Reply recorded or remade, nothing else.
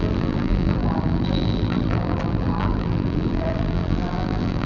remade